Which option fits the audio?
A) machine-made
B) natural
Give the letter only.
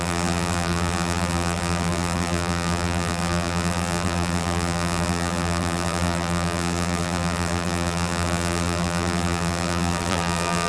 A